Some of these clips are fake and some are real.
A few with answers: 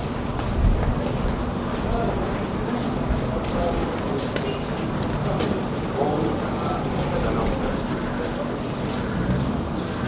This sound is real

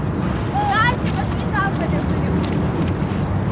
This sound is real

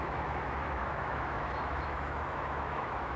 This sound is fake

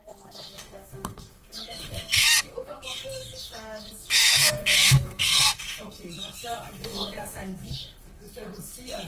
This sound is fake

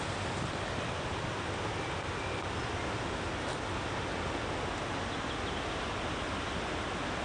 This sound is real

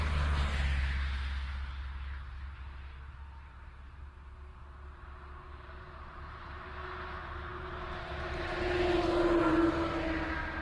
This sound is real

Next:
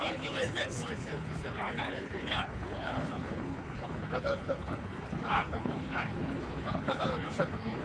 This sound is fake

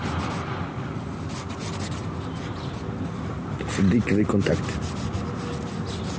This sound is real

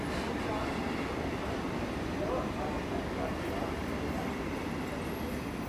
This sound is real